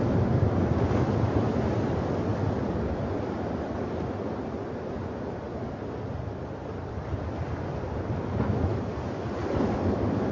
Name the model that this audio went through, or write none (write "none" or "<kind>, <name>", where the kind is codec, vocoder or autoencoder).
none